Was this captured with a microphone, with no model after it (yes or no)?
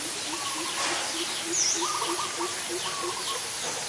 yes